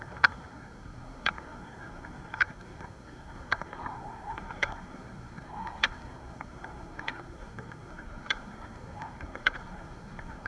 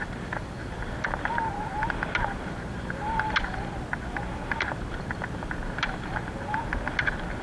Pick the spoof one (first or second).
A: first